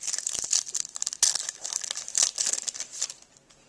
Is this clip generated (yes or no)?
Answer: no